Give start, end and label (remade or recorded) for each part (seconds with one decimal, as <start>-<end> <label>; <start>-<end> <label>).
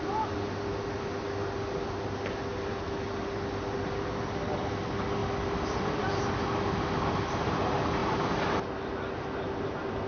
0.0-10.1 recorded